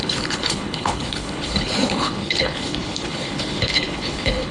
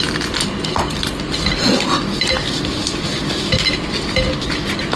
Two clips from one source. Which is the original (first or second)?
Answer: second